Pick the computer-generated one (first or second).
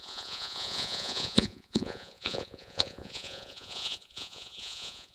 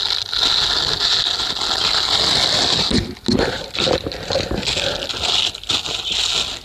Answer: first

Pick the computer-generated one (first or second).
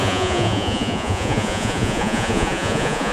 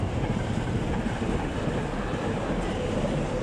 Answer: first